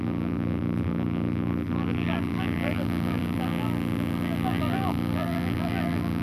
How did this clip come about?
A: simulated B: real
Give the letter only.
A